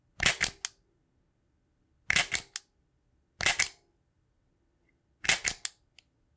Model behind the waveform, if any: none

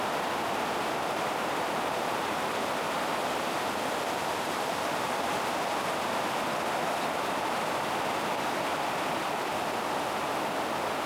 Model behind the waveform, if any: none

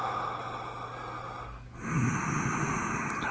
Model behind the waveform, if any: none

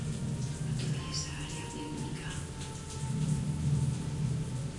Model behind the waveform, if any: none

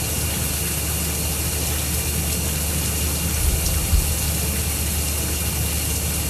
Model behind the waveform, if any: none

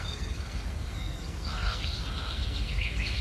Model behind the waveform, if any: codec, SNAC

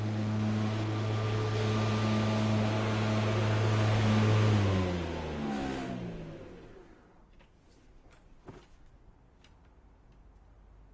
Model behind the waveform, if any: none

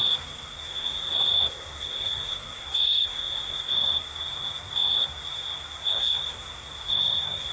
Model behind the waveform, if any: codec, SNAC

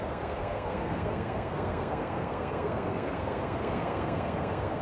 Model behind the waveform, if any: codec, SNAC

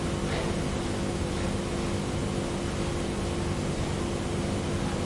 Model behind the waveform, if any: none